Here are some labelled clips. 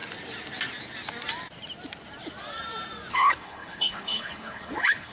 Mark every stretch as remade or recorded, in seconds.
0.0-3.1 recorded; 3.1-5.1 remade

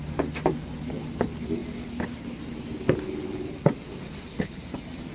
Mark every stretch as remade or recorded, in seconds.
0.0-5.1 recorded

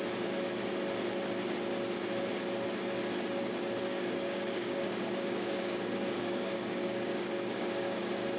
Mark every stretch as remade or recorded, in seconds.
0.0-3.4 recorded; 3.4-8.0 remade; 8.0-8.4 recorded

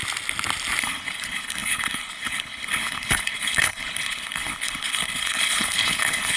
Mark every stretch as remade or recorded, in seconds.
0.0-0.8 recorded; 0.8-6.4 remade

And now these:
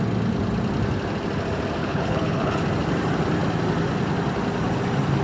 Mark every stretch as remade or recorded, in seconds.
0.0-1.8 recorded; 1.8-2.5 remade; 2.5-5.2 recorded

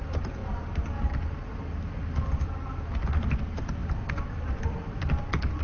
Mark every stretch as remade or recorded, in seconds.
0.0-5.6 recorded

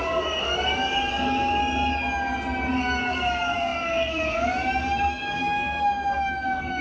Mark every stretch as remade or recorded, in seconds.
0.0-1.6 remade; 1.6-2.8 recorded; 2.8-6.8 remade

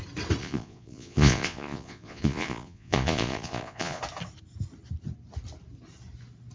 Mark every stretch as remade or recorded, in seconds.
0.0-0.4 recorded; 0.4-4.0 remade; 4.0-6.5 recorded